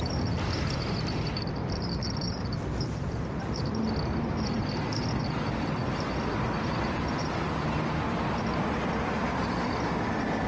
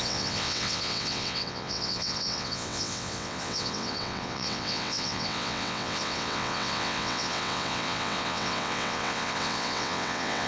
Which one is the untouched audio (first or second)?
first